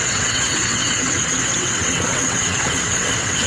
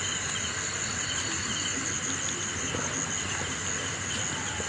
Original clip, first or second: second